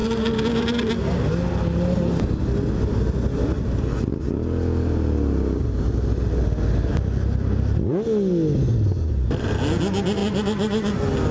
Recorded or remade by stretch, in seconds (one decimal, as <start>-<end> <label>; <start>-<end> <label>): 0.0-11.3 recorded